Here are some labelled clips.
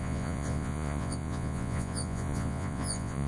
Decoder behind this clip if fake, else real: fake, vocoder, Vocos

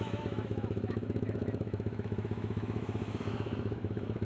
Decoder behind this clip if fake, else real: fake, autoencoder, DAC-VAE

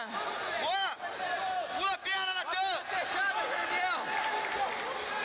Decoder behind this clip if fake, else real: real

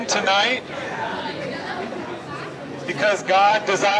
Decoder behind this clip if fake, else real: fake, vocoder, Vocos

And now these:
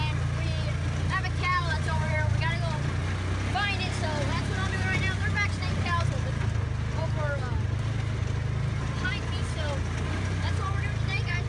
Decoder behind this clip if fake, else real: real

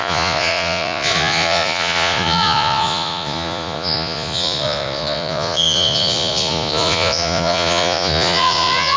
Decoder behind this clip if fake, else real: fake, vocoder, Vocos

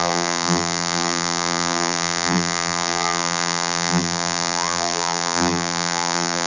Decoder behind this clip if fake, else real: fake, vocoder, BigVGAN v2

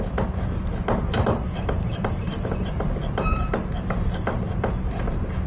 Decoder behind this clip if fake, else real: real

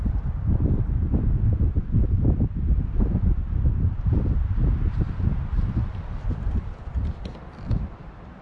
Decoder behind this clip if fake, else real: fake, vocoder, BigVGAN v2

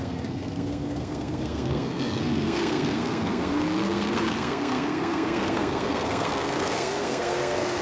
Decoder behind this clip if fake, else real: fake, codec, SNAC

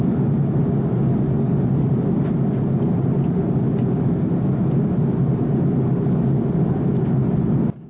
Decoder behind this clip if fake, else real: real